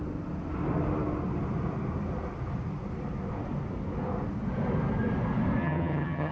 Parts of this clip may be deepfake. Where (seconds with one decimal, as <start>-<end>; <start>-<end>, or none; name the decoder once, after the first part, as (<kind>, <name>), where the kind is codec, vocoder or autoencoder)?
5.6-6.3 (vocoder, HiFi-GAN)